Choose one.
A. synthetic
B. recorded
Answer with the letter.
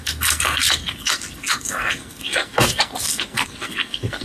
A